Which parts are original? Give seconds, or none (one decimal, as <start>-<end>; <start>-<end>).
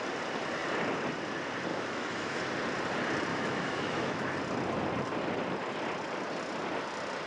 0.0-1.7; 2.4-3.3; 4.3-7.3